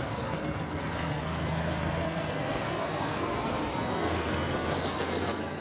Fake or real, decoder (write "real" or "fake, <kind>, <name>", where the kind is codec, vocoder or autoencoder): fake, codec, SNAC